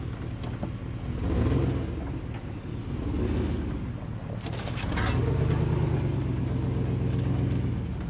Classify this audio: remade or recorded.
recorded